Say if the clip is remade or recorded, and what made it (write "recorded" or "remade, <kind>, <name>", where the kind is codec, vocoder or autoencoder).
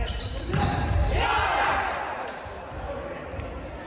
recorded